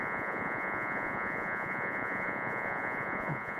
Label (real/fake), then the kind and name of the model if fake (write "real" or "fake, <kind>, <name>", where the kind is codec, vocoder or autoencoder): fake, vocoder, Vocos